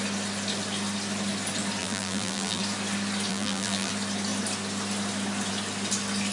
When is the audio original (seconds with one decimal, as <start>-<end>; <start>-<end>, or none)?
0.0-1.8; 2.6-3.3; 3.9-6.3